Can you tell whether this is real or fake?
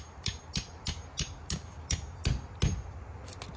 real